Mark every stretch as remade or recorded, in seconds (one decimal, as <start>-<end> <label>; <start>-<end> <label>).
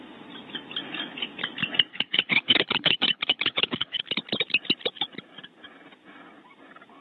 0.0-1.9 recorded; 1.9-4.0 remade; 4.0-7.0 recorded